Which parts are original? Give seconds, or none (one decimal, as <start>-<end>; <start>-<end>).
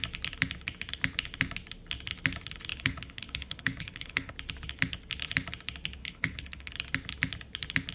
0.0-2.7; 4.3-6.0; 6.7-7.9